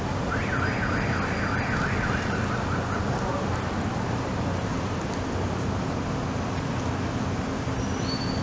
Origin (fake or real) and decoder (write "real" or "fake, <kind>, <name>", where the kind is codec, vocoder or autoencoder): real